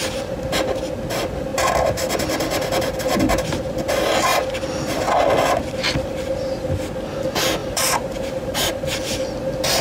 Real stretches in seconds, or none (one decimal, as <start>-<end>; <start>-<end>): 0.0-1.5; 2.1-7.6; 8.7-9.8